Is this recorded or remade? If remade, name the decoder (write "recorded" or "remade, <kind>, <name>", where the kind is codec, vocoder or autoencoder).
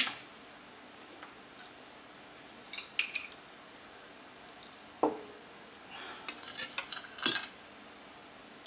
recorded